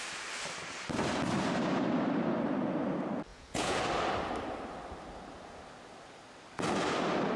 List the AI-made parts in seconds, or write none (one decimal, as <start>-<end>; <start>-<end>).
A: 3.3-3.8